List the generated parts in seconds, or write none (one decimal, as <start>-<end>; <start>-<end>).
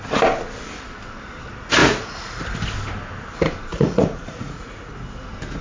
1.8-2.4; 3.7-4.9